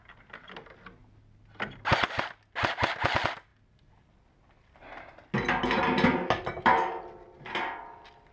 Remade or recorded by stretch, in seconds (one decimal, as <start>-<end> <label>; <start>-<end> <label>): 0.0-8.3 recorded